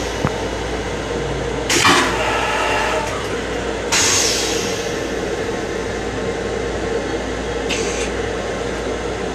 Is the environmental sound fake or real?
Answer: real